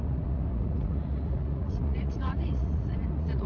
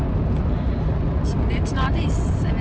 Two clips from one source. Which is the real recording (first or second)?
second